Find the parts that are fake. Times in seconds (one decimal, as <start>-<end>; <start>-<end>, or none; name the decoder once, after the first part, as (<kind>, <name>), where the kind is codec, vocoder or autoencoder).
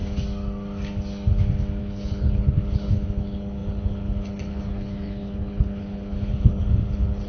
1.8-7.3 (codec, HILCodec)